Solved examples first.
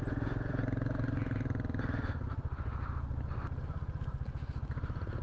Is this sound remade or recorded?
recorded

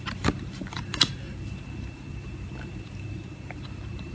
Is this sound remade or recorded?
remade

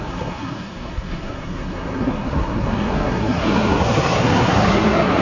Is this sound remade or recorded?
remade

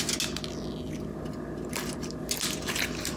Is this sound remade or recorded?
recorded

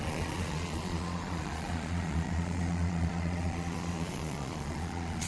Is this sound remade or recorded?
remade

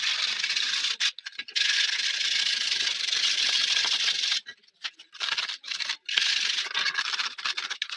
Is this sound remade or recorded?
recorded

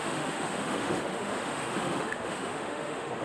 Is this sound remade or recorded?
remade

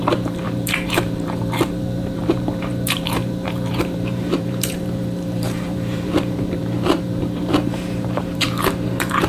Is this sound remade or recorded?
remade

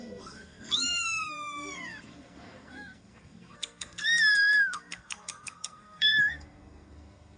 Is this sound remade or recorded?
remade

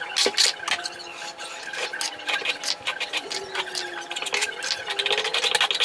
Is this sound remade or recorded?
recorded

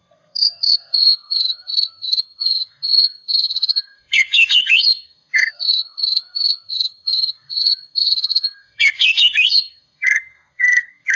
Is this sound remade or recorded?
remade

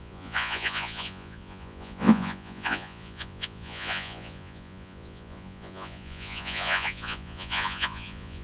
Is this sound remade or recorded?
remade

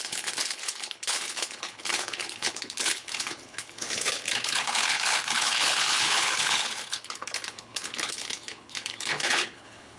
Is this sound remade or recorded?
remade